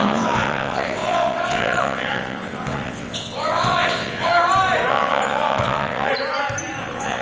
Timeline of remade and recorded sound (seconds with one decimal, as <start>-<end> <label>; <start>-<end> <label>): 0.0-4.3 remade; 4.3-4.9 recorded; 4.9-6.1 remade; 6.1-6.8 recorded; 6.8-7.2 remade